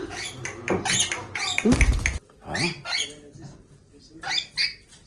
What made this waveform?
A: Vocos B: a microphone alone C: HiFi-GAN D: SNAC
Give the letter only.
B